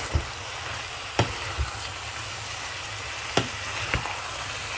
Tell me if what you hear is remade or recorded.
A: recorded